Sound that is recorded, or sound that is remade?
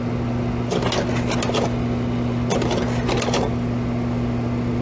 recorded